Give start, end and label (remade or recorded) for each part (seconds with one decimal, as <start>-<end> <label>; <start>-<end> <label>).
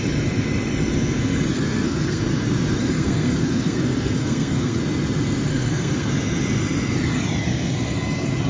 0.0-1.5 recorded; 1.5-2.2 remade; 2.2-2.8 recorded; 2.8-4.8 remade; 4.8-5.5 recorded; 5.5-6.1 remade; 6.1-8.5 recorded